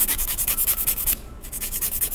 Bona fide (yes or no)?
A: no